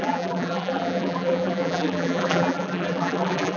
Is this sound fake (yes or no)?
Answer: yes